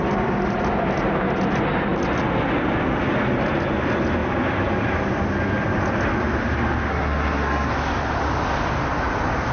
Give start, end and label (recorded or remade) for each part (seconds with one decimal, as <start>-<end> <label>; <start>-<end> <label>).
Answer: 0.0-6.9 recorded; 6.9-7.7 remade; 7.7-9.5 recorded